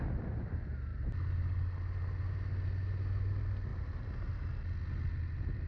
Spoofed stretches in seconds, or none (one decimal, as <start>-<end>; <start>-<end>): 0.9-2.0